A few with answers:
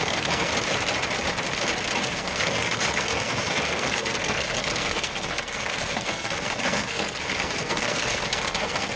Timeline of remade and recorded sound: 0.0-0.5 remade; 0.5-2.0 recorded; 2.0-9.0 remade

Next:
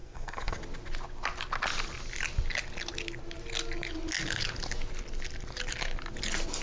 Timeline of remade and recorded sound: 0.0-0.6 remade; 0.6-6.6 recorded

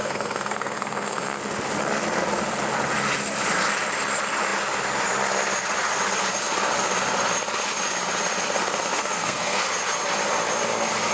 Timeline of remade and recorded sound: 0.0-1.4 remade; 1.4-8.9 recorded; 8.9-9.6 remade; 9.6-11.1 recorded